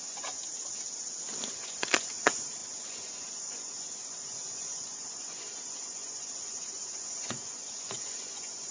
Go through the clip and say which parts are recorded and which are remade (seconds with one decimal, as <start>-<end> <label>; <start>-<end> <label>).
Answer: 0.0-0.4 remade; 0.4-1.4 recorded; 1.4-8.7 remade